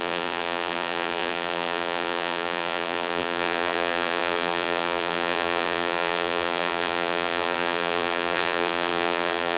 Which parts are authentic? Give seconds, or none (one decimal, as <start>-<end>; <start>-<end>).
none